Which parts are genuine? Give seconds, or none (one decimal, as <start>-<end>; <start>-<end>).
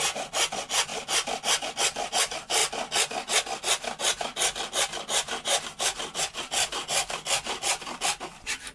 2.6-5.6